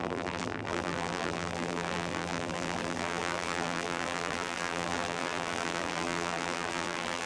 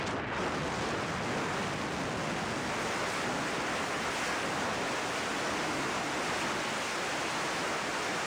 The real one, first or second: second